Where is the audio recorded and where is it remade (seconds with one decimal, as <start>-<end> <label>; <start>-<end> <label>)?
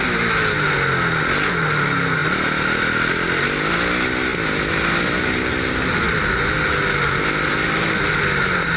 0.0-8.8 recorded